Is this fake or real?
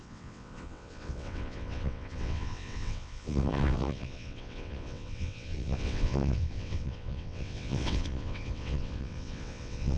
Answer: fake